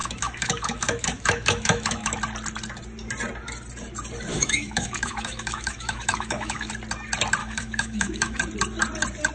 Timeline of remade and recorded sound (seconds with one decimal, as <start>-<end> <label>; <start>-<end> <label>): 0.0-2.2 remade; 2.2-4.3 recorded; 4.3-6.7 remade; 6.7-7.4 recorded; 7.4-8.4 remade; 8.4-9.3 recorded